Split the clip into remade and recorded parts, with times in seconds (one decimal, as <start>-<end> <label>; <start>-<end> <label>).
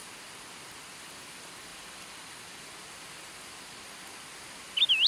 0.0-1.7 recorded; 1.7-2.6 remade; 2.6-5.1 recorded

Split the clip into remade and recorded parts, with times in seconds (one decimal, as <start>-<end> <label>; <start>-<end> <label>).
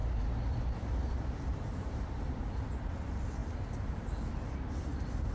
0.0-2.4 remade; 2.4-5.3 recorded